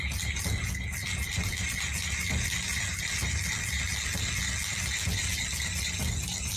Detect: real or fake real